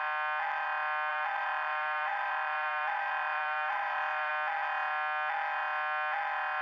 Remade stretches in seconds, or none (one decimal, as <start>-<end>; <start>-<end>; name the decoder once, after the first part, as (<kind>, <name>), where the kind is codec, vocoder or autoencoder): 1.1-4.3 (vocoder, BigVGAN v2)